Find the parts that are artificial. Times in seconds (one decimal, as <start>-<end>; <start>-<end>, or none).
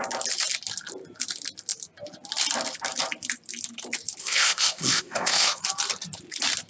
4.2-5.6